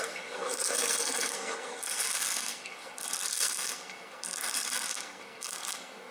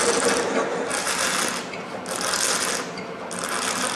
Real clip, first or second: second